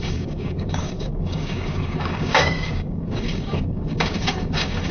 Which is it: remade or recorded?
remade